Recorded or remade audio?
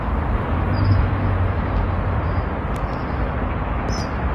recorded